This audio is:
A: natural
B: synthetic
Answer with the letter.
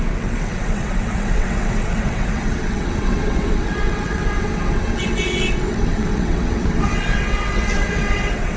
B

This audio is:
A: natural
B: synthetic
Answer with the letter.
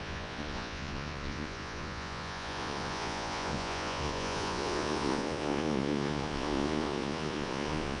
B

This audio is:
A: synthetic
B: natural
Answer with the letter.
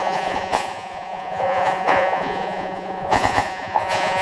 A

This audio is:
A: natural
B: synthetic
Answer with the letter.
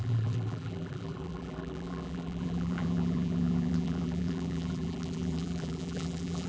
B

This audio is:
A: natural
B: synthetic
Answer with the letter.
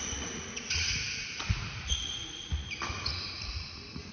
B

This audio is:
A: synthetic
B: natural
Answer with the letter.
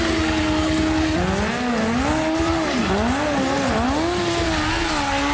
B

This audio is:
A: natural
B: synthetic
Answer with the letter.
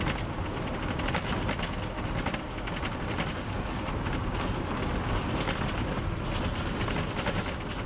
A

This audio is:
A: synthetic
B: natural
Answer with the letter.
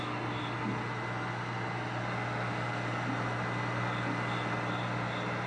B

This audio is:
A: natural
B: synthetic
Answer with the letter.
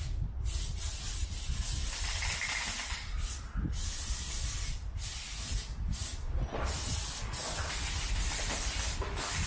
A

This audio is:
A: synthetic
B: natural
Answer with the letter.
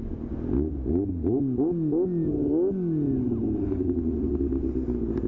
B